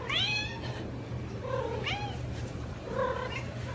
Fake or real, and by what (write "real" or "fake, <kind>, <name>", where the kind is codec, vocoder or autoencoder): fake, vocoder, BigVGAN v2